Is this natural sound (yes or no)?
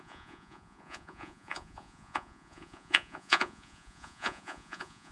no